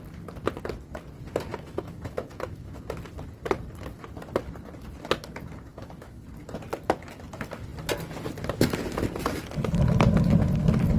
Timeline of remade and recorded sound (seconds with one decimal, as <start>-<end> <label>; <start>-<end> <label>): 0.0-1.5 recorded; 1.5-2.8 remade; 2.8-5.7 recorded; 5.7-6.2 remade; 6.2-11.0 recorded

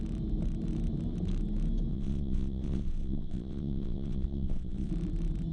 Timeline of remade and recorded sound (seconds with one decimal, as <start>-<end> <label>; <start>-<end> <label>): 0.0-1.9 recorded; 1.9-4.9 remade; 4.9-5.5 recorded

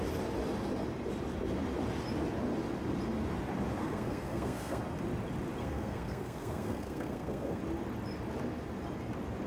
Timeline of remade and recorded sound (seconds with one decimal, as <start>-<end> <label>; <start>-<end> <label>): 0.0-3.8 recorded; 3.8-4.8 remade; 4.8-5.6 recorded; 5.6-7.6 remade; 7.6-9.5 recorded

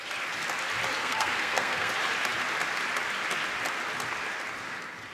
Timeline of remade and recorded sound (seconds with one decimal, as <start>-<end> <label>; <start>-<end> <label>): 0.0-1.0 recorded; 1.0-1.9 remade; 1.9-5.1 recorded